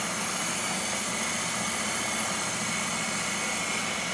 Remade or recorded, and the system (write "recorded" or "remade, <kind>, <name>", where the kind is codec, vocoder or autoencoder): recorded